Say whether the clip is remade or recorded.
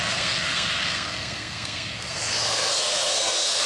remade